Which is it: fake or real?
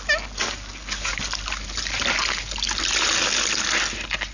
real